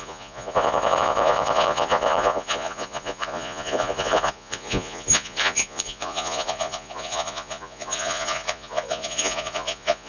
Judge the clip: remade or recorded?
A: remade